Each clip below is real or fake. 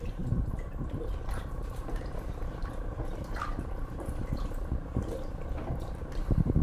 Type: fake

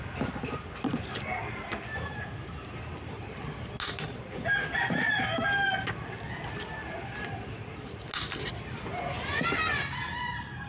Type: real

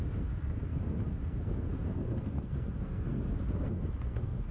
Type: fake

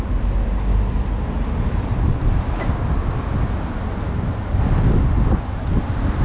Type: real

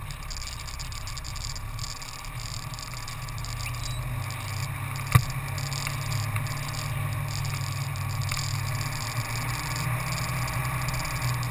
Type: real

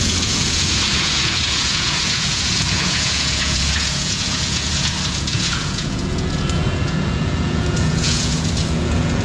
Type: fake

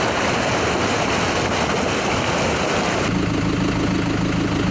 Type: real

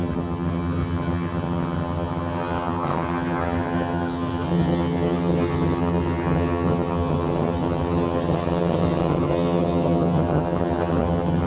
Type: fake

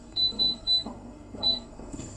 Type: fake